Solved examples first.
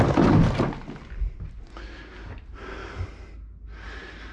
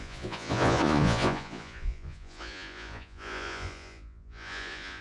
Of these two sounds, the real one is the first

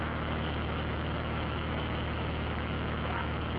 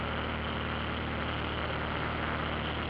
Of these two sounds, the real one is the second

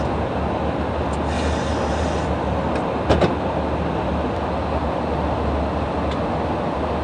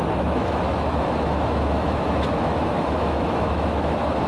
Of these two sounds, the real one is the first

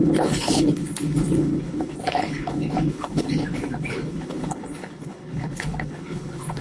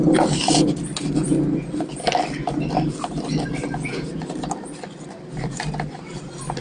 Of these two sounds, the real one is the second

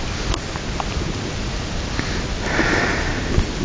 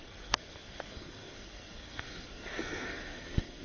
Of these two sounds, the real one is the first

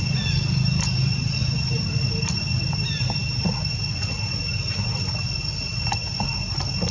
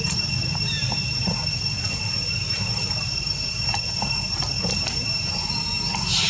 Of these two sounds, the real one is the first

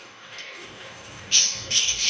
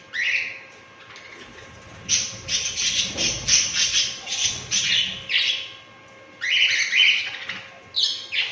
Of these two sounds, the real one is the second